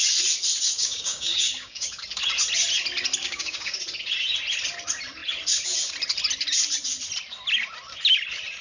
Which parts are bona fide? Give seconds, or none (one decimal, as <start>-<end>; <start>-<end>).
0.0-0.6; 2.0-3.2; 3.8-8.6